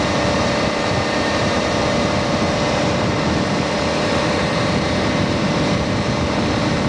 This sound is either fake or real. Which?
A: fake